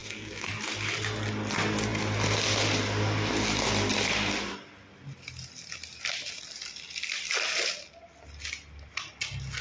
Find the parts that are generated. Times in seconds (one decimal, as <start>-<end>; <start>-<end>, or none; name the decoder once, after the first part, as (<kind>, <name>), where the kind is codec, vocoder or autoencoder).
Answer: 0.0-0.5 (codec, SNAC)